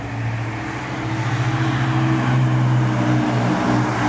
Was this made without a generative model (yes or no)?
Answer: yes